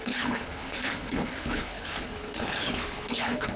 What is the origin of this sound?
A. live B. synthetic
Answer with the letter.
B